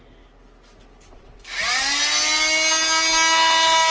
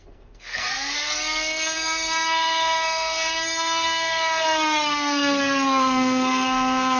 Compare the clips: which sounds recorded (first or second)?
first